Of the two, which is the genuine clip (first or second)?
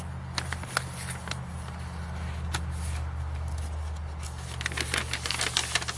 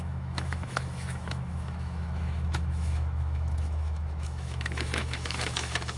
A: first